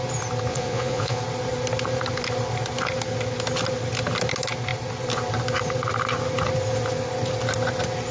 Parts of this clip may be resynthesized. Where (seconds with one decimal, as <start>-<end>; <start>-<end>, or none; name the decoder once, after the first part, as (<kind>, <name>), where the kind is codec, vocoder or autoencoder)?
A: 0.5-1.2 (vocoder, Vocos)